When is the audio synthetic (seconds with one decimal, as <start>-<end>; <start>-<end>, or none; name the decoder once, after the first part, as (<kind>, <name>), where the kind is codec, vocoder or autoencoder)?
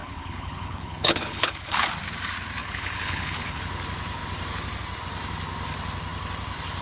0.0-1.9 (codec, HILCodec); 2.6-3.6